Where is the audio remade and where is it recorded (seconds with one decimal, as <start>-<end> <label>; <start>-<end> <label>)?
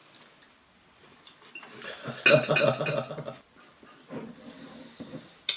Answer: 0.0-5.6 recorded